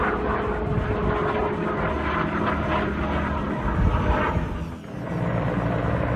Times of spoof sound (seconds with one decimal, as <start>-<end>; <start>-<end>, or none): none

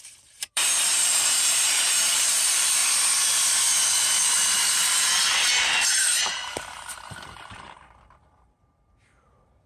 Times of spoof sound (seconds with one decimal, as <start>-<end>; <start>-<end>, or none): 0.0-2.8; 4.7-9.7

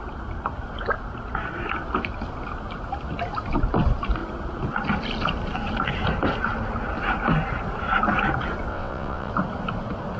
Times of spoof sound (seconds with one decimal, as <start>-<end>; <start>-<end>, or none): 8.7-9.3

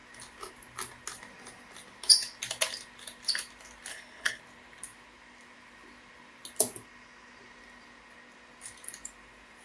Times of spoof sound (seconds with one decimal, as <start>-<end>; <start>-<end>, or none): 3.9-4.4

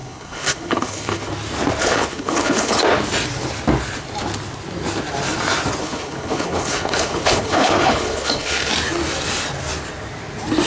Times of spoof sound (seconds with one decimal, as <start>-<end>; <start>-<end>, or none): 0.0-1.3; 1.8-2.8; 5.8-8.7